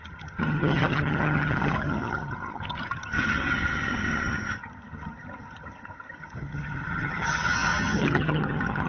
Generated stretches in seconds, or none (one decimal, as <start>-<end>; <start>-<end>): 0.0-8.9